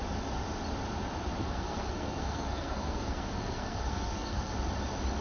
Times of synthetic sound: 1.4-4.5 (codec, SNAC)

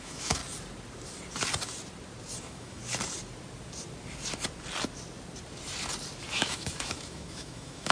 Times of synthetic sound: 0.0-0.4 (autoencoder, DAC-VAE); 2.4-2.8; 6.3-7.9

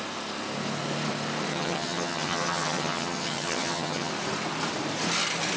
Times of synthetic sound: 1.5-4.1 (vocoder, HiFi-GAN)

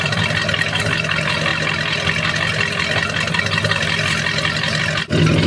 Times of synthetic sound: none

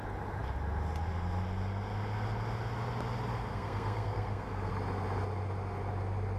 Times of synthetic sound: 3.5-4.7 (codec, SNAC)

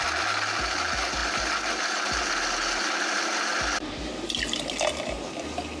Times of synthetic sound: none

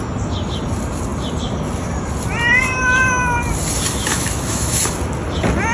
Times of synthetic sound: 4.1-4.8 (autoencoder, DAC-VAE)

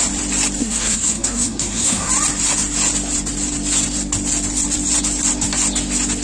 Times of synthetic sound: 0.6-2.1 (codec, SNAC)